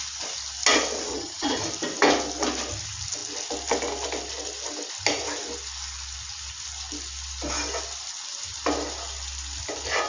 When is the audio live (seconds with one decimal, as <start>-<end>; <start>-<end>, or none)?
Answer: 0.0-1.1; 1.6-10.1

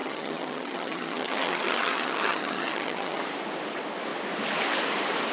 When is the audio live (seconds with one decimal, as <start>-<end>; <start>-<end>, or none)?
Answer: 3.2-5.3

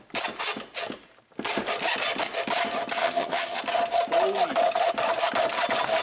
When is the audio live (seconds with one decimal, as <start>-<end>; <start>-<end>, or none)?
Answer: 0.0-3.0; 3.6-6.0

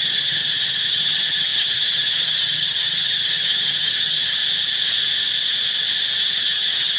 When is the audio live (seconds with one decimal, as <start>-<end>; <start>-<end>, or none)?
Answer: 4.4-6.3

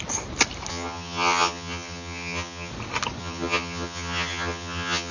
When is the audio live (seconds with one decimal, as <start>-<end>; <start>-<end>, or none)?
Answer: 0.0-0.7; 2.7-3.2